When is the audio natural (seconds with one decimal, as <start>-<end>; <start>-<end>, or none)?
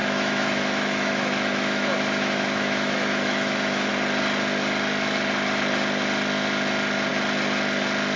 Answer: 3.9-8.2